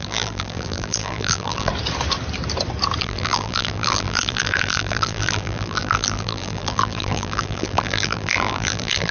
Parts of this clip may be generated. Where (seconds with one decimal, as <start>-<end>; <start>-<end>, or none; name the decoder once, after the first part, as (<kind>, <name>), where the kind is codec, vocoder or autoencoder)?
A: 0.0-1.7 (vocoder, BigVGAN v2); 3.0-9.1